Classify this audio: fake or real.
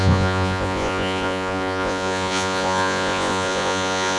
fake